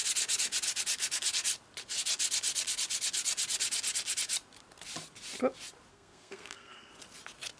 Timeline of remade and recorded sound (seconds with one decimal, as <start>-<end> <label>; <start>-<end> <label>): 0.0-5.9 recorded; 5.9-6.9 remade; 6.9-7.6 recorded